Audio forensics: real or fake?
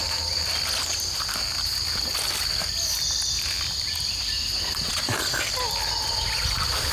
real